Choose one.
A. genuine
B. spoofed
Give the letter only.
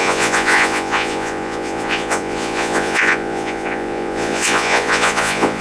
B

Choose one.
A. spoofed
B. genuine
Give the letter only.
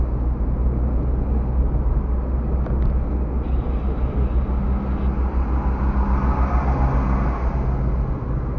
B